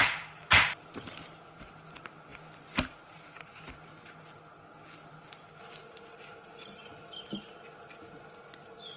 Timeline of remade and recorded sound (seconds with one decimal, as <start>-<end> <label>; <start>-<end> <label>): 0.0-9.0 recorded